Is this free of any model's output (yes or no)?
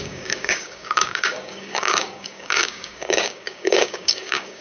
no